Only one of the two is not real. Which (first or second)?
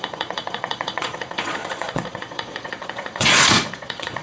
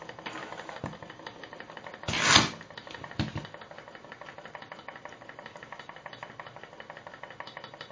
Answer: first